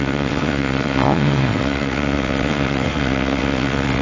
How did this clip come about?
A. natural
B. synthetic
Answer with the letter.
B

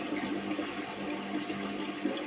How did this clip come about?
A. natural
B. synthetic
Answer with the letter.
A